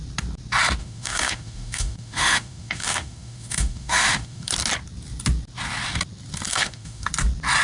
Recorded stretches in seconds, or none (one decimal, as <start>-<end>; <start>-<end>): 0.0-0.8; 4.5-6.5; 7.1-7.6